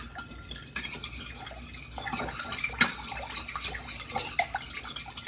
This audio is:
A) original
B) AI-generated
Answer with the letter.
A